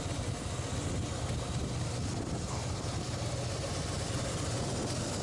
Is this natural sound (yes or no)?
yes